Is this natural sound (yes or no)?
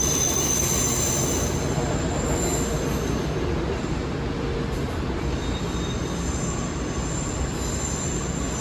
yes